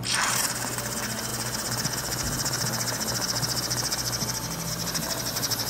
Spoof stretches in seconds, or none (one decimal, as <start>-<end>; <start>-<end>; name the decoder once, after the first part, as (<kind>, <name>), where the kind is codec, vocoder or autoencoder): 0.0-1.3 (vocoder, BigVGAN v2); 4.7-5.7